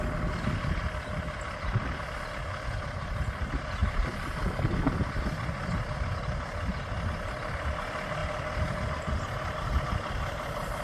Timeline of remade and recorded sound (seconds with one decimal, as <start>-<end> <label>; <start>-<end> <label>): 0.0-3.8 recorded; 3.8-4.9 remade; 4.9-8.2 recorded; 8.2-9.8 remade; 9.8-10.8 recorded